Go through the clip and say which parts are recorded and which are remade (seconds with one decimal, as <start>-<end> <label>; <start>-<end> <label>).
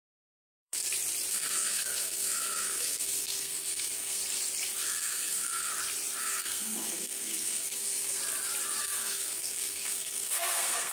0.0-0.8 remade; 0.8-1.3 recorded; 1.3-4.2 remade; 4.2-4.8 recorded; 4.8-5.7 remade; 5.7-6.2 recorded; 6.2-8.2 remade; 8.2-8.8 recorded; 8.8-10.9 remade